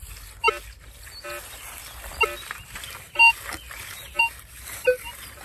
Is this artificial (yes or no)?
no